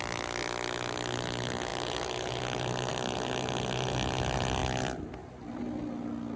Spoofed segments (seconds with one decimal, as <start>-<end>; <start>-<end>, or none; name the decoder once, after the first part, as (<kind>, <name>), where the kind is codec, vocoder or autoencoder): none